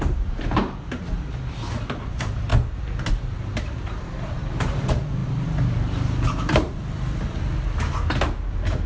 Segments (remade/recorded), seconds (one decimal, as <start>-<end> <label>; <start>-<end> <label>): 0.0-1.0 remade; 1.0-2.1 recorded; 2.1-2.5 remade; 2.5-3.1 recorded; 3.1-6.8 remade; 6.8-8.5 recorded; 8.5-8.9 remade